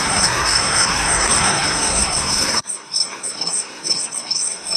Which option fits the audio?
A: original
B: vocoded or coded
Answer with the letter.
B